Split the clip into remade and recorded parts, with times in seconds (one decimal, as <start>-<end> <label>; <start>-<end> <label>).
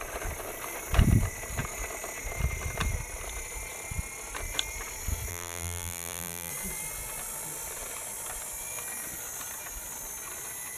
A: 0.0-5.3 recorded; 5.3-6.5 remade; 6.5-10.8 recorded